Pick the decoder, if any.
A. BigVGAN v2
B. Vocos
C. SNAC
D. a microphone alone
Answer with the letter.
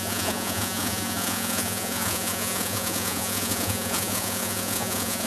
B